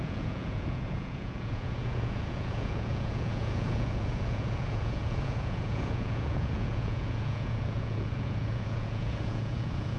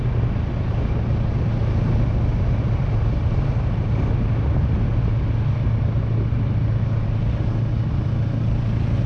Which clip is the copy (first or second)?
first